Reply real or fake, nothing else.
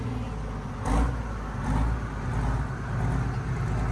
real